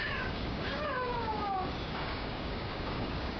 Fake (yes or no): yes